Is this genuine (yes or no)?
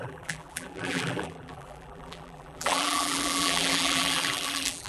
no